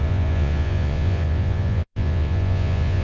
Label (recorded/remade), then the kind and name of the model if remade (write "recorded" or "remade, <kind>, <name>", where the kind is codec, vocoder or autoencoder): remade, vocoder, Vocos